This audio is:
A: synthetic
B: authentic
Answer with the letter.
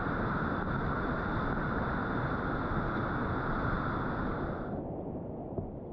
B